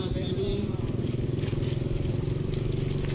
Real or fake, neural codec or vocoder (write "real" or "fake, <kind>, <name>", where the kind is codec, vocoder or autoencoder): real